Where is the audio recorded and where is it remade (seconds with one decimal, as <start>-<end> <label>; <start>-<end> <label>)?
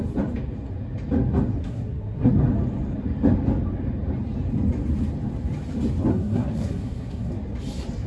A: 0.0-1.6 recorded; 1.6-2.3 remade; 2.3-6.1 recorded; 6.1-7.3 remade; 7.3-8.1 recorded